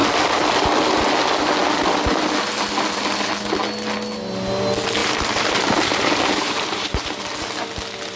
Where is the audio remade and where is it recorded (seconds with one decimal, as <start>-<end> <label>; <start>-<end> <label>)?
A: 0.0-5.0 recorded; 5.0-7.2 remade; 7.2-8.2 recorded